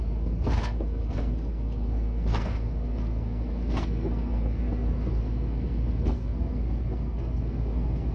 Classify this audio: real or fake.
fake